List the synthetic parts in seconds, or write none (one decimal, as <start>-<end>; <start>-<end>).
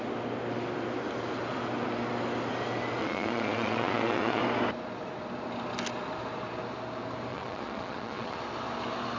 3.0-4.4; 7.3-8.4